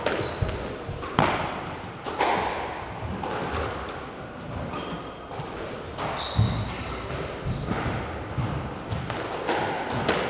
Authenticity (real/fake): real